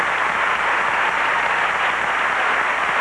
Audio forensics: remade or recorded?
recorded